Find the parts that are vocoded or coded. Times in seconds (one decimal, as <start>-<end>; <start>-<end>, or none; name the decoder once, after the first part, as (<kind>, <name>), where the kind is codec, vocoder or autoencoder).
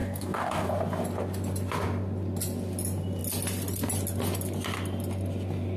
0.0-0.7 (codec, DAC)